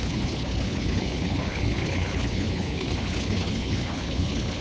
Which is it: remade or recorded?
remade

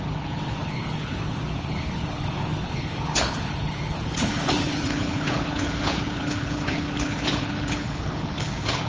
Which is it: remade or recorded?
remade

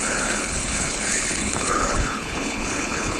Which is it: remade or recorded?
remade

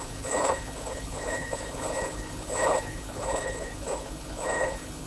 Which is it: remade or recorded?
remade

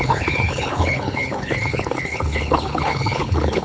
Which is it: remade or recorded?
remade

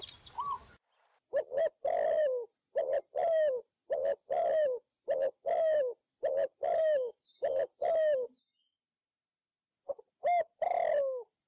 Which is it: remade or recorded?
recorded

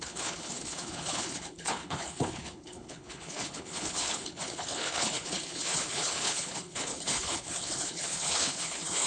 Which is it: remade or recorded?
remade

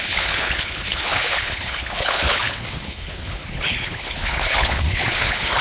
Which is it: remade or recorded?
remade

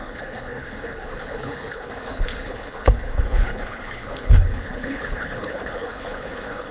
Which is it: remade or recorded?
remade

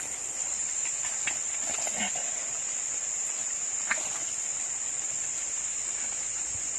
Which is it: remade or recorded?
recorded